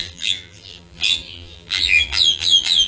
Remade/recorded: remade